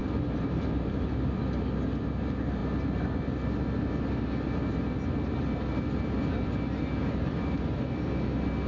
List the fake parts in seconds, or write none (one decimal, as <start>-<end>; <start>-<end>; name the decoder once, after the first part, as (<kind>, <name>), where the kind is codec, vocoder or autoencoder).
0.0-1.4 (vocoder, BigVGAN v2); 7.0-8.0